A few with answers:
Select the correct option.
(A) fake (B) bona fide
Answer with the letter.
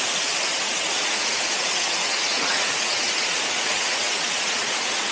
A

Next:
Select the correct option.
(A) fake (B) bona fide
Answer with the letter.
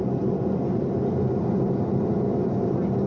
B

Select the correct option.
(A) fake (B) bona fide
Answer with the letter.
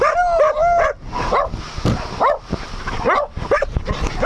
B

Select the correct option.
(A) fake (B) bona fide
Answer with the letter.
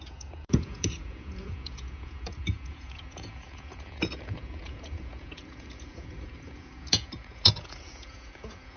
A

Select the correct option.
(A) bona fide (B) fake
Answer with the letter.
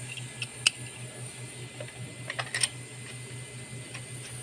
A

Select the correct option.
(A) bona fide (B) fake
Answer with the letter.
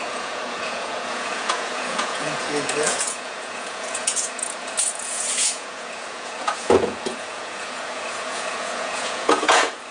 B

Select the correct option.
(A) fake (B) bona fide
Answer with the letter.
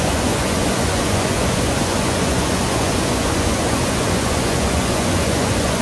A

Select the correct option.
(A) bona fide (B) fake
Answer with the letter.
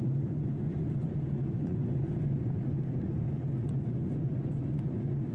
B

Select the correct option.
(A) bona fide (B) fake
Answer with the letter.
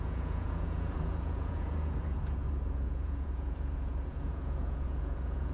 B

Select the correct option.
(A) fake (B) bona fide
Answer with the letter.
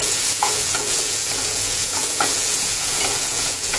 A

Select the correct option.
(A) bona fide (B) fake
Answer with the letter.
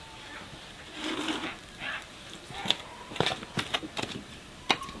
A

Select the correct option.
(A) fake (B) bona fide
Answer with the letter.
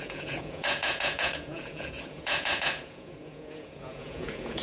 A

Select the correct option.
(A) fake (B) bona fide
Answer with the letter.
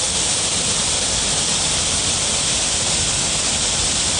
B